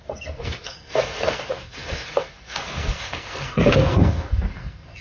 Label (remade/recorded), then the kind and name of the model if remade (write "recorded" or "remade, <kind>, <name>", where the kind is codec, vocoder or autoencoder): remade, codec, SNAC